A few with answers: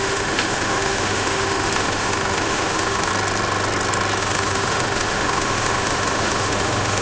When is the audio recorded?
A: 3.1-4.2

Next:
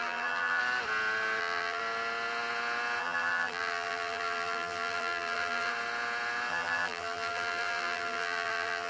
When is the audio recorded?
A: 0.6-1.4; 1.8-3.0; 5.7-6.5

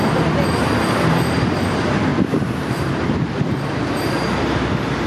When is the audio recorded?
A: 0.0-2.1; 4.1-5.1

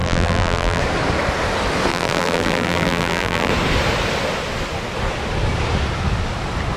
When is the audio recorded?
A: 0.8-1.9; 3.5-6.8